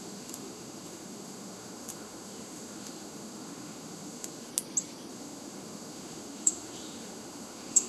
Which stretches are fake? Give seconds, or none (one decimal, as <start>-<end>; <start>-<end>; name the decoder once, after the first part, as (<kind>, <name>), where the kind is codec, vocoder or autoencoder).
0.0-4.5 (autoencoder, DAC-VAE); 5.1-7.9